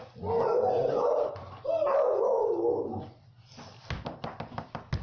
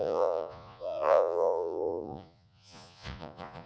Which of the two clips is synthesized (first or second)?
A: second